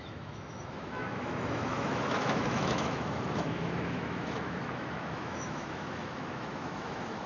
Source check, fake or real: fake